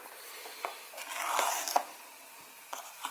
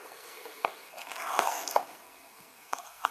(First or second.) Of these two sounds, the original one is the first